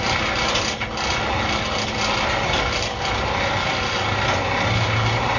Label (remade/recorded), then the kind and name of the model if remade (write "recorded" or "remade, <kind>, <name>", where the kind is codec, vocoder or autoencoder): recorded